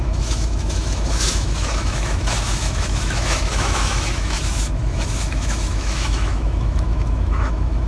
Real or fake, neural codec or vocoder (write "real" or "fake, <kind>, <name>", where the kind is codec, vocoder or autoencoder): fake, autoencoder, DAC-VAE